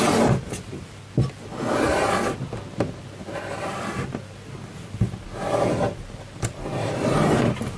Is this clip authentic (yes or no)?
yes